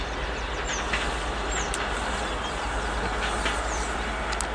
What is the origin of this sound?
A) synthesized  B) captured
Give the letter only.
B